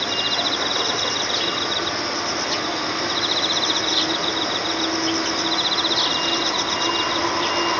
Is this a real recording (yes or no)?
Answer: yes